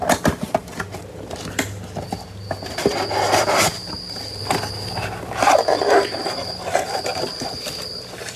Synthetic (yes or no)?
no